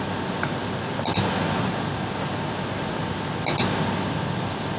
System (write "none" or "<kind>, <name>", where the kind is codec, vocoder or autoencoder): none